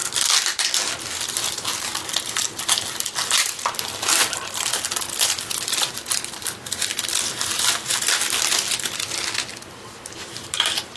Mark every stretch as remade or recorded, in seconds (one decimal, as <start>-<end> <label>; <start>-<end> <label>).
0.0-1.7 recorded; 1.7-6.8 remade; 6.8-11.0 recorded